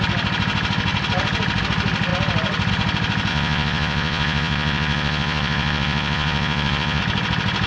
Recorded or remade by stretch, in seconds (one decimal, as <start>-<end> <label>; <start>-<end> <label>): 0.0-3.3 recorded; 3.3-7.0 remade; 7.0-7.7 recorded